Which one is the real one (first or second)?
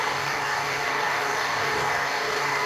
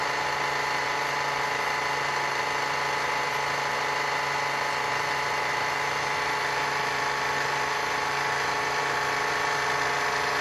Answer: second